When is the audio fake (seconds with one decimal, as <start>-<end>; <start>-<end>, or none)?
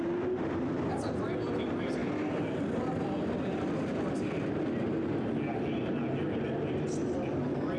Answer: none